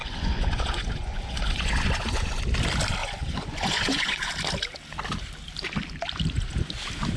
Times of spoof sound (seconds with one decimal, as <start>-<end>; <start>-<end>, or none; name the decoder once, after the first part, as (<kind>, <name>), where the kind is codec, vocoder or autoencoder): 0.0-2.4 (vocoder, Vocos); 3.0-4.3